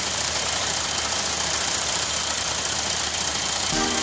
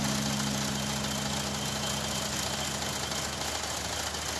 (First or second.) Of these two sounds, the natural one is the second